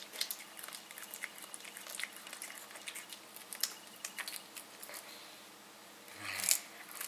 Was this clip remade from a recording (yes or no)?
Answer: no